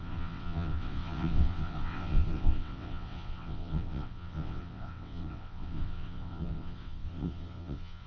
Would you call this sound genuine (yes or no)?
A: no